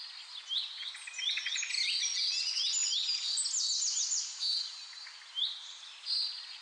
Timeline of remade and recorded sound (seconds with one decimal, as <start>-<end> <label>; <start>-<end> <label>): 0.0-5.6 recorded; 5.6-6.6 remade